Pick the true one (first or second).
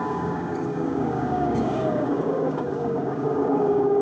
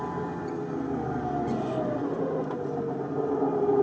second